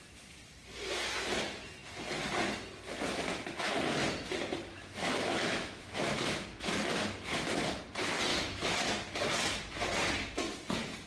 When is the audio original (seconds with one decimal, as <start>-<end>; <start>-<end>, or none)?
0.0-4.7; 7.8-8.3; 8.8-11.1